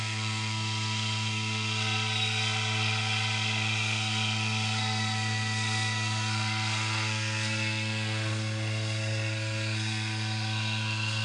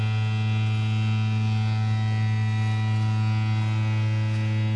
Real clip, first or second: second